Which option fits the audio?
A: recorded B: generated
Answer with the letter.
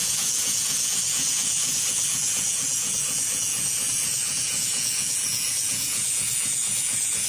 B